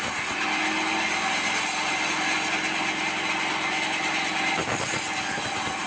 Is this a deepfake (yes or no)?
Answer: no